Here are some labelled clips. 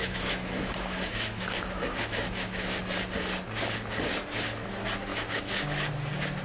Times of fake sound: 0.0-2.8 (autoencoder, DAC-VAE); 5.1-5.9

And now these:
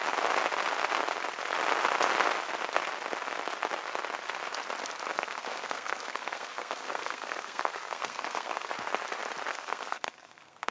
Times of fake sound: 5.1-8.7 (codec, SNAC); 9.5-10.7

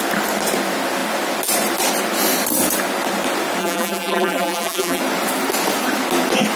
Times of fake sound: 3.6-5.0 (vocoder, BigVGAN v2)

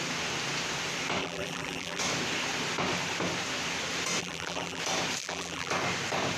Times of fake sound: 1.2-2.0 (vocoder, BigVGAN v2); 4.2-4.8; 5.2-5.7

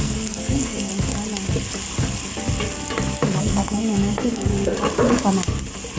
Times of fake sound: 0.0-0.9 (codec, SNAC); 3.4-4.5

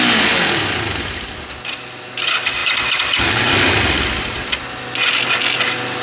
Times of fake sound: none

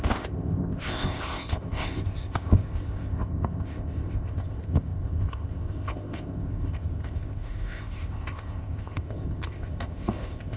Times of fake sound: 0.0-10.6 (codec, ZipCodec)